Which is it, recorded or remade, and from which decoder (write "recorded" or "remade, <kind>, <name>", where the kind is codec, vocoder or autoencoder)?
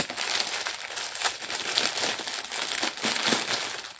recorded